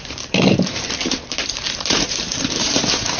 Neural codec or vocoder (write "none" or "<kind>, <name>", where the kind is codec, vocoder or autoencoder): vocoder, BigVGAN v2